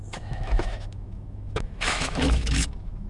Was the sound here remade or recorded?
remade